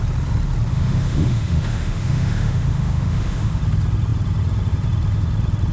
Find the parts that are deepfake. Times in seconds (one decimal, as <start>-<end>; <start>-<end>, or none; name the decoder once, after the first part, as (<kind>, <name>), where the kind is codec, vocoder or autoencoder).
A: 0.7-3.6 (autoencoder, DAC-VAE)